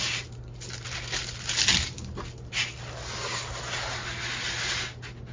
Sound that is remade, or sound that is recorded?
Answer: recorded